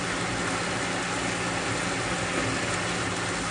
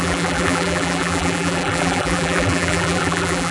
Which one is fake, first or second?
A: second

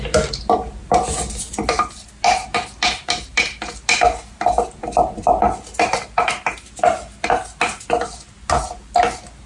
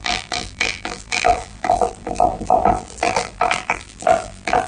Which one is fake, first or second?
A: second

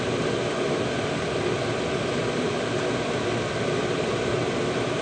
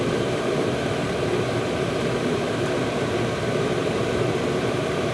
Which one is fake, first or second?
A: second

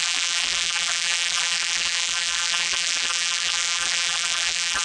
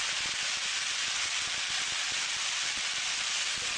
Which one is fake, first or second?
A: first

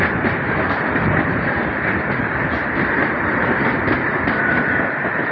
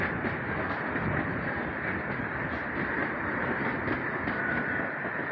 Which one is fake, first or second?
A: first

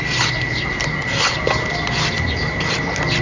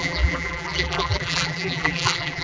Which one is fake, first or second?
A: second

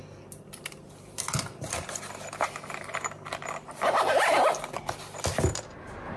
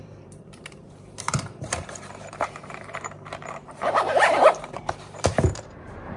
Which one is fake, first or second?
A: second